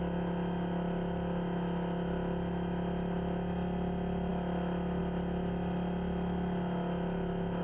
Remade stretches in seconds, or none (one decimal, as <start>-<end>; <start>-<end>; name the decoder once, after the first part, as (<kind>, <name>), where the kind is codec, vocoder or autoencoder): none